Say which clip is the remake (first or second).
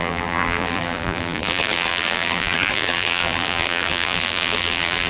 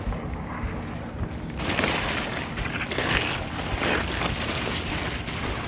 first